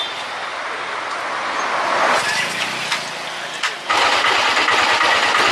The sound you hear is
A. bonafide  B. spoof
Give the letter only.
A